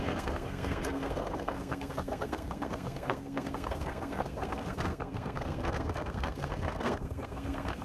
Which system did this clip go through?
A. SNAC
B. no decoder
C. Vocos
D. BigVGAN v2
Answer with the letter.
A